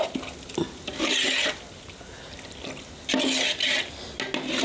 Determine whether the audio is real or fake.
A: real